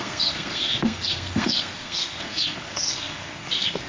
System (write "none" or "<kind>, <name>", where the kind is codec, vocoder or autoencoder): codec, SNAC